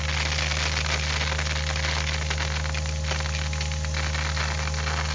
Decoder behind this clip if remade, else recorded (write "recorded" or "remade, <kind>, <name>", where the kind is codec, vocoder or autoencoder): recorded